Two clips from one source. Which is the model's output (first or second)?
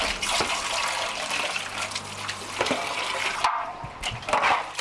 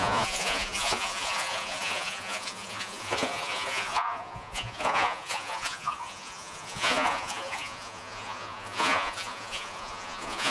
second